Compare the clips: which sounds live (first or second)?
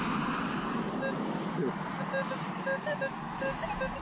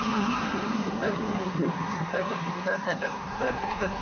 first